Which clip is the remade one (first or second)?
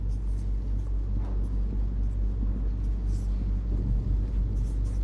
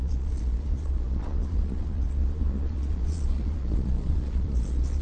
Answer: second